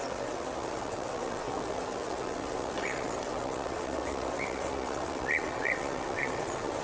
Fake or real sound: fake